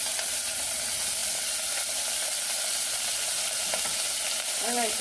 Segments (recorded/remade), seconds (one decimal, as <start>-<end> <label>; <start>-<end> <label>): 0.0-5.0 recorded